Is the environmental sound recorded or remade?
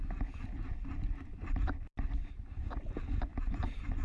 recorded